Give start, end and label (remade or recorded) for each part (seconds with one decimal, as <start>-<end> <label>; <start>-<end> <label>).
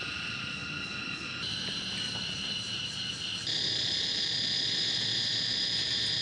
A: 0.0-6.2 remade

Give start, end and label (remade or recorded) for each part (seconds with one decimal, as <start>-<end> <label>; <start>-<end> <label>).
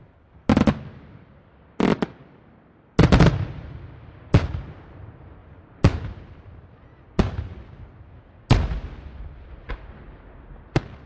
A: 0.0-11.1 recorded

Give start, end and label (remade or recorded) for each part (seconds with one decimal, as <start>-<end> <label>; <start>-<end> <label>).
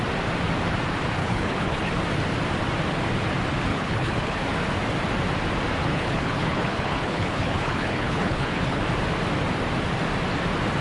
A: 0.0-1.2 recorded; 1.2-1.9 remade; 1.9-3.7 recorded; 3.7-4.4 remade; 4.4-5.8 recorded; 5.8-8.8 remade; 8.8-10.8 recorded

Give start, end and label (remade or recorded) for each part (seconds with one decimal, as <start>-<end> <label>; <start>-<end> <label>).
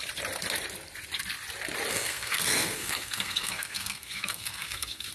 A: 0.0-1.9 recorded; 1.9-5.1 remade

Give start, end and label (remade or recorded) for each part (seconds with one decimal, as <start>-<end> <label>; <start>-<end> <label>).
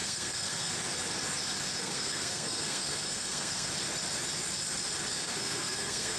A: 0.0-0.7 remade; 0.7-1.8 recorded; 1.8-3.7 remade; 3.7-5.1 recorded; 5.1-6.2 remade